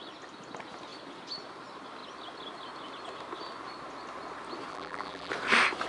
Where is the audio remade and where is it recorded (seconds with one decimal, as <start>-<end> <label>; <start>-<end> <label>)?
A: 0.0-4.7 recorded; 4.7-5.3 remade; 5.3-5.9 recorded